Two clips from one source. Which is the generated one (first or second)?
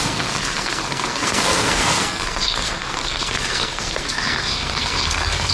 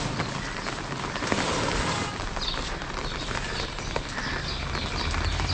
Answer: first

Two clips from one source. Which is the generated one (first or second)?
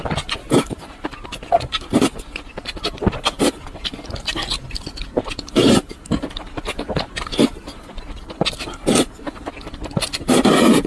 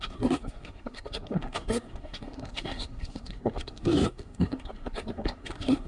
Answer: second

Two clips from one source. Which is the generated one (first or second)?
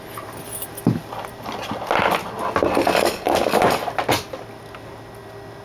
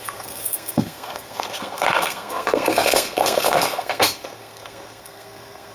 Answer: second